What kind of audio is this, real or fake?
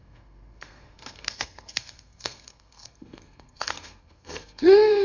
fake